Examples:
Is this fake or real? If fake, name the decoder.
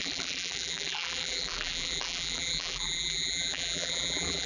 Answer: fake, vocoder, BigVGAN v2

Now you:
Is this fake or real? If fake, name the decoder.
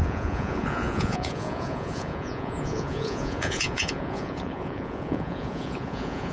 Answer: fake, vocoder, Vocos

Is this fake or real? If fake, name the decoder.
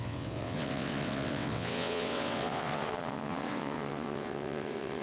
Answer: fake, vocoder, WaveNeXt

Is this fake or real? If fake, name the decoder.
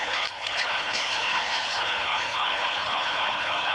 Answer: fake, codec, HILCodec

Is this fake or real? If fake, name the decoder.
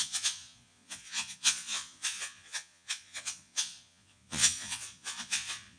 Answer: fake, vocoder, Vocos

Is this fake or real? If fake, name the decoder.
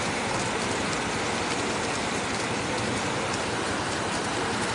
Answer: real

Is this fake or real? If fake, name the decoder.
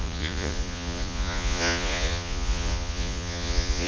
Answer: fake, vocoder, Vocos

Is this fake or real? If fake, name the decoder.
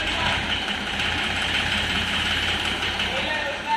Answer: fake, vocoder, BigVGAN v2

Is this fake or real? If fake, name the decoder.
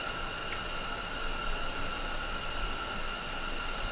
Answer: real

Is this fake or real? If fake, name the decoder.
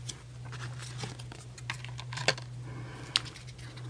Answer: real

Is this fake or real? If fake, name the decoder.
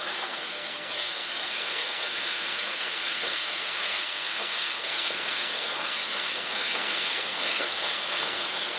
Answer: fake, codec, SNAC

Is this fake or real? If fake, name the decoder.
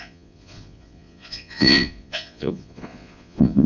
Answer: fake, vocoder, Vocos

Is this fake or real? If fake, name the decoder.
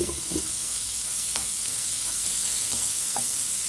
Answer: fake, codec, SNAC